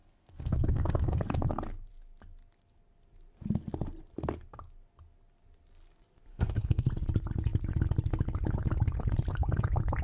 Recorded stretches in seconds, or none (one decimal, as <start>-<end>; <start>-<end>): 1.2-6.3; 6.9-10.0